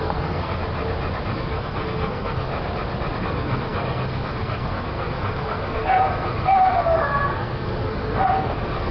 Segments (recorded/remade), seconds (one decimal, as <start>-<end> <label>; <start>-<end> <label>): 0.0-0.6 remade; 0.6-1.3 recorded; 1.3-2.5 remade; 2.5-3.2 recorded; 3.2-8.9 remade